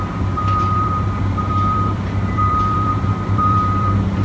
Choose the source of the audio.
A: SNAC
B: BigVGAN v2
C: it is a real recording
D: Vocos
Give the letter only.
B